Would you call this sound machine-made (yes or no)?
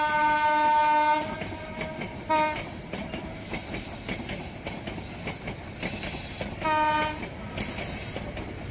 no